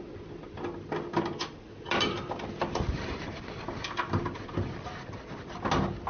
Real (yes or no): yes